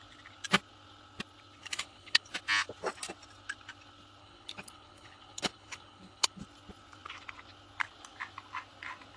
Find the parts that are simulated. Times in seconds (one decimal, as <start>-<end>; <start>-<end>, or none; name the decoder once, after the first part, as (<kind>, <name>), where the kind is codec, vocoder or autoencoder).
1.6-2.3 (codec, HILCodec); 4.2-6.4